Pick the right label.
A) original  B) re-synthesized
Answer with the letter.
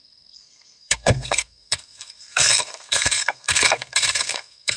B